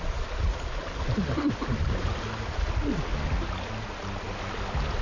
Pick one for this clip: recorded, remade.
recorded